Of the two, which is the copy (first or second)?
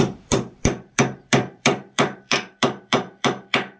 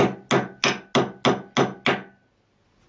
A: first